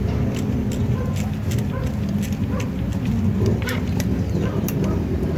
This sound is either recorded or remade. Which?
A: recorded